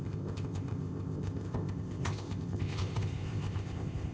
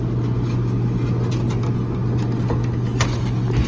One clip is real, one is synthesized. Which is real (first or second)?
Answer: second